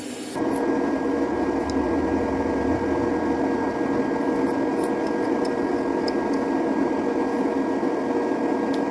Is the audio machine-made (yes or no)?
no